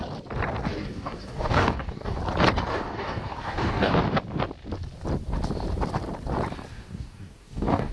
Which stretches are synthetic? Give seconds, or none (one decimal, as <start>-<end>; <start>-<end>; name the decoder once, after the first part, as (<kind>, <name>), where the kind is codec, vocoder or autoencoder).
0.7-2.2 (codec, DAC); 2.7-3.9; 6.7-7.9